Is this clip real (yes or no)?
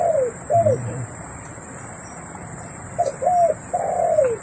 no